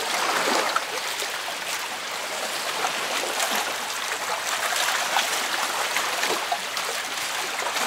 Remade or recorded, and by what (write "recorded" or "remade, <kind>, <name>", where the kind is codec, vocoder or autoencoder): recorded